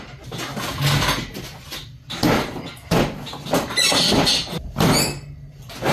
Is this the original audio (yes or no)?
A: yes